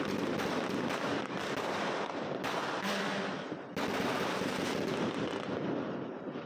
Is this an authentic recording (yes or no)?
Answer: yes